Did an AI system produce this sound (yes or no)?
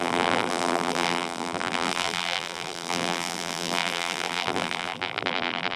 yes